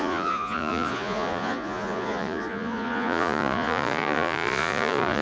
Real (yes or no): no